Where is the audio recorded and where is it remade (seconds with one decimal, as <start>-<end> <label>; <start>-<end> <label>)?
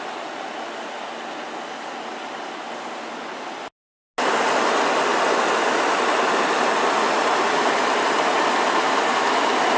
0.0-9.8 recorded